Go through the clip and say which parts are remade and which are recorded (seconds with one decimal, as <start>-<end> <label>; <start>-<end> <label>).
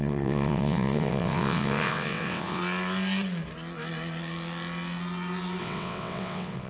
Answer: 0.0-2.6 remade; 2.6-5.6 recorded; 5.6-6.7 remade